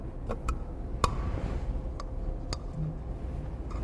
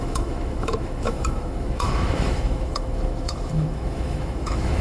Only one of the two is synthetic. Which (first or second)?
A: second